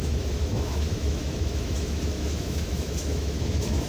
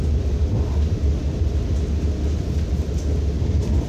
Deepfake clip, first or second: first